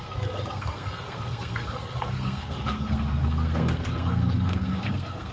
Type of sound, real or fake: fake